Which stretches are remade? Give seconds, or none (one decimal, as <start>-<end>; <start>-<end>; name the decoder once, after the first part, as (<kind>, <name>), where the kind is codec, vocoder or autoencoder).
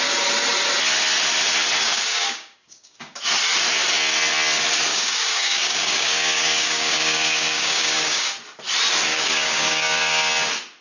1.9-3.2 (codec, DAC); 4.9-8.3; 9.1-10.3